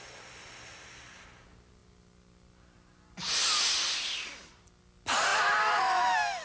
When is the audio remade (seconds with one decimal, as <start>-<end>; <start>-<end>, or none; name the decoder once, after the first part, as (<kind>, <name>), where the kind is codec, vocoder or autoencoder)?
none